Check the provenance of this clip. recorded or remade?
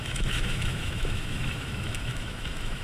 remade